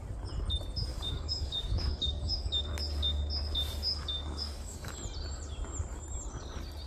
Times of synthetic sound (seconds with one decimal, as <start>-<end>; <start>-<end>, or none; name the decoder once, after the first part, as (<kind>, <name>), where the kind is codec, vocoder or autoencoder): 0.9-2.7 (codec, DAC); 3.9-4.9